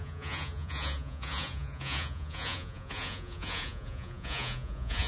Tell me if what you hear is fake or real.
fake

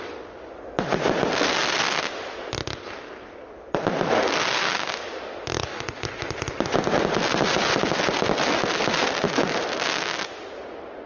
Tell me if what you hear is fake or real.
real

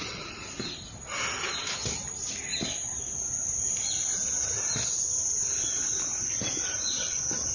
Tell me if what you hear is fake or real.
real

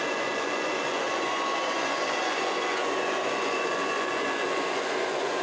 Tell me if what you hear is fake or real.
fake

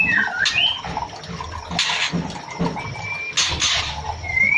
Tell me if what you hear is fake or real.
real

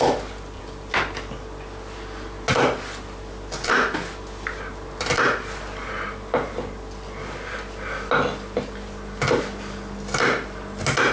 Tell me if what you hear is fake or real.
real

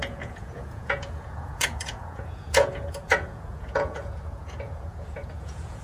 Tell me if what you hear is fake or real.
fake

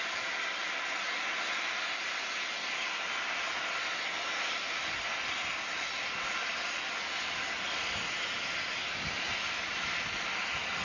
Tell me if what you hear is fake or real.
real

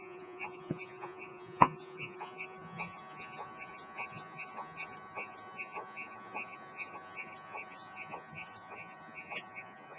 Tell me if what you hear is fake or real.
fake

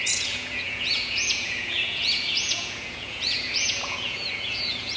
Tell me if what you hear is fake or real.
fake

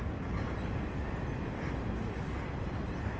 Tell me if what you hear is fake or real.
real